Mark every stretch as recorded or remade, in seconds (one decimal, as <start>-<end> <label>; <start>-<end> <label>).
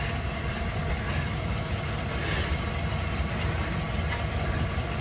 0.0-5.0 recorded